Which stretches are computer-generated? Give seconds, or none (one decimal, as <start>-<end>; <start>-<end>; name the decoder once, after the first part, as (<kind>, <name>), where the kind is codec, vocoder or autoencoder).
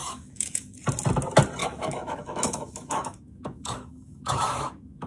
0.0-0.8 (autoencoder, DAC-VAE); 1.6-5.1